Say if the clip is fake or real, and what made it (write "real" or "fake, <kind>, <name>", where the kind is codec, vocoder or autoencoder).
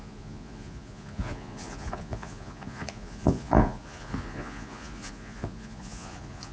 fake, vocoder, Vocos